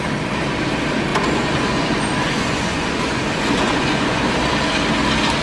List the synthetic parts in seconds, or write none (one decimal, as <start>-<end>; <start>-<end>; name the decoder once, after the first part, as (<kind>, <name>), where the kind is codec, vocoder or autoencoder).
1.1-4.3 (vocoder, Vocos)